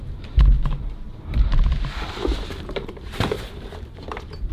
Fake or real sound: fake